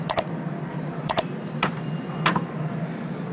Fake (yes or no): no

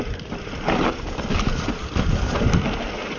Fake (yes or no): no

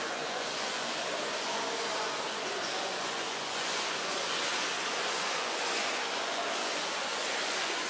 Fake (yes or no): yes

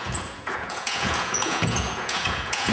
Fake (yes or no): yes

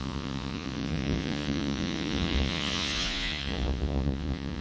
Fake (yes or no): yes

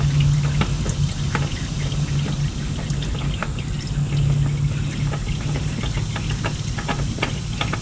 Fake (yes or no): no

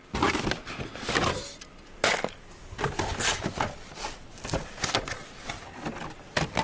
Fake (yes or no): no